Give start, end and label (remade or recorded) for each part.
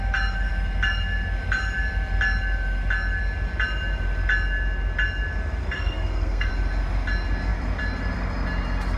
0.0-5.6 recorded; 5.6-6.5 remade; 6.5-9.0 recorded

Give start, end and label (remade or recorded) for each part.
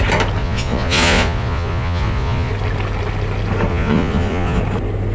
0.0-0.4 recorded; 0.4-2.5 remade; 2.5-3.7 recorded; 3.7-4.6 remade; 4.6-5.1 recorded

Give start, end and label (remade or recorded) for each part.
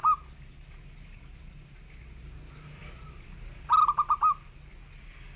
0.0-5.4 recorded